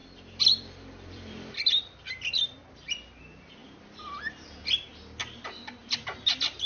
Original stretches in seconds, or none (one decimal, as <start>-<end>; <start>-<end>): 2.0-6.7